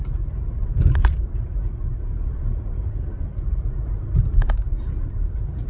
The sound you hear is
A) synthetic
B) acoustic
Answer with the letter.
A